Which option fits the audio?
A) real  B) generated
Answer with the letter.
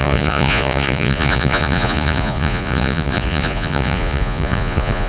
B